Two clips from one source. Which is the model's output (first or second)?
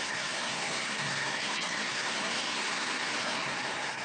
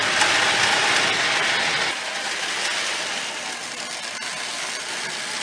first